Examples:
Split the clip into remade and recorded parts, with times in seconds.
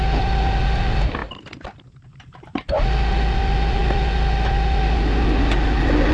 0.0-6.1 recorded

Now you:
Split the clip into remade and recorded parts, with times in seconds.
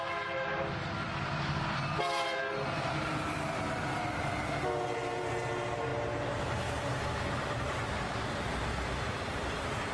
0.0-9.9 recorded